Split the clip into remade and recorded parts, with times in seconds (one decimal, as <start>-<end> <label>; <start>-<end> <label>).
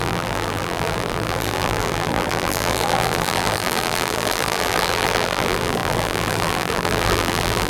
0.0-7.7 remade